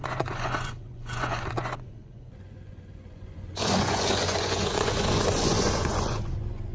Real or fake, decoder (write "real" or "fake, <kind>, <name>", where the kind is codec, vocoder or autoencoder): fake, vocoder, Vocos